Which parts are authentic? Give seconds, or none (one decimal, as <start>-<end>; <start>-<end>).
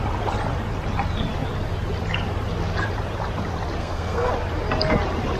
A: 0.0-3.8; 4.3-5.4